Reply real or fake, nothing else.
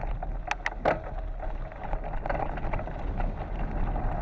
real